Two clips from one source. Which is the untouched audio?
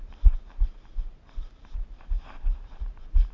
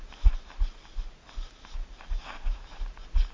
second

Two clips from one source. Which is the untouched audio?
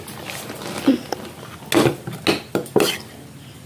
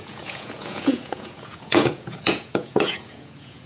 first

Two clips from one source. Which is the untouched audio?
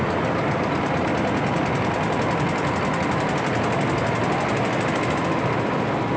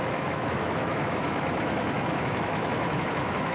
first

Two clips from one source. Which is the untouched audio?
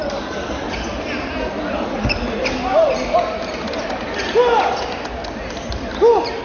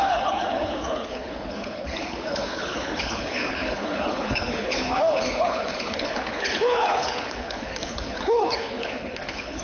first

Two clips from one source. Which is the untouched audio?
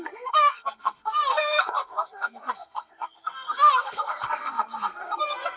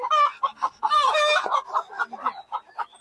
second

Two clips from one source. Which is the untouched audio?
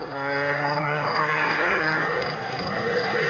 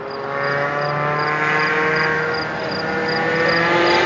second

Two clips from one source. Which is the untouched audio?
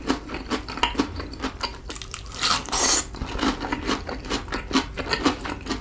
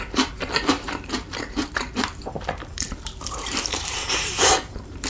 first